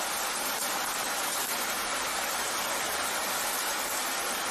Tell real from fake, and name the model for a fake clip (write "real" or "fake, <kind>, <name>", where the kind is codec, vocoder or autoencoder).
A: real